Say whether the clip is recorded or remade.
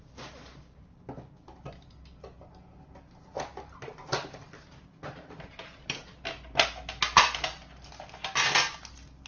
recorded